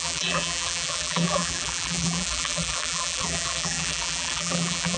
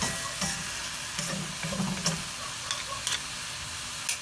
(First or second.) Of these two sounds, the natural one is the second